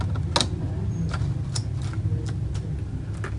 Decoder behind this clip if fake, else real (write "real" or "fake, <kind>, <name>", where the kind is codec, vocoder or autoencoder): real